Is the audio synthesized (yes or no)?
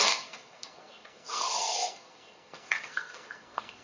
yes